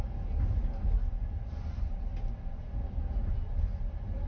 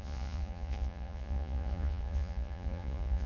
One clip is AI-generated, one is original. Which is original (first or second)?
first